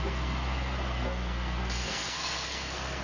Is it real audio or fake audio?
fake